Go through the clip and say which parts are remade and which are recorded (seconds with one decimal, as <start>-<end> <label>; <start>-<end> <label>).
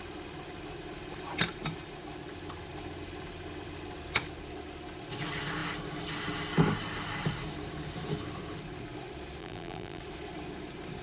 0.0-9.4 recorded; 9.4-10.0 remade; 10.0-11.0 recorded